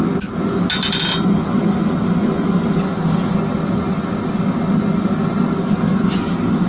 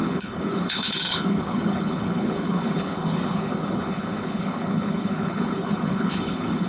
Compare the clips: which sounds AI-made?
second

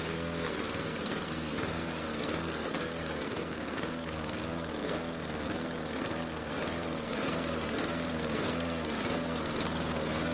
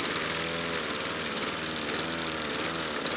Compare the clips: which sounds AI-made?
first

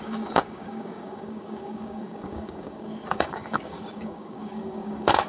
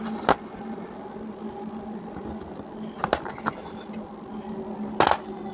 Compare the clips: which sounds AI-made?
first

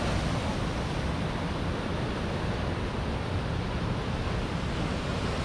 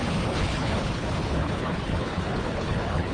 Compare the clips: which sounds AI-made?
second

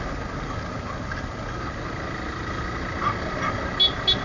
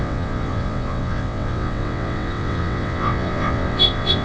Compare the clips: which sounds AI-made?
second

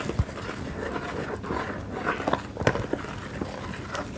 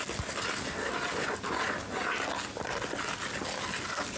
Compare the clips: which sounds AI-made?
first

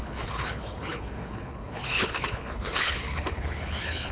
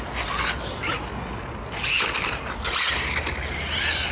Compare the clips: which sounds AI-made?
first